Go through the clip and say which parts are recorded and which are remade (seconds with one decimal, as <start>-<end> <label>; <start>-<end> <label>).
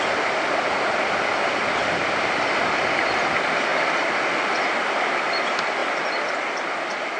0.0-5.8 remade; 5.8-6.3 recorded; 6.3-7.2 remade